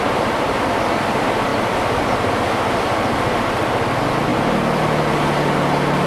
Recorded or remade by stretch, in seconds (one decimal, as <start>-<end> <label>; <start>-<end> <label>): 0.0-6.1 recorded